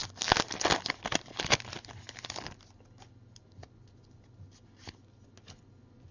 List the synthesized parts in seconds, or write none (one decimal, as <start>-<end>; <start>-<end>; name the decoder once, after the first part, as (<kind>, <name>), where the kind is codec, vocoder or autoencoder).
none